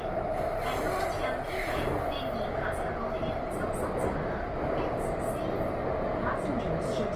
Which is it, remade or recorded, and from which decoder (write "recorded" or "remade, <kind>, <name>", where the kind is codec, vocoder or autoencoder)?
recorded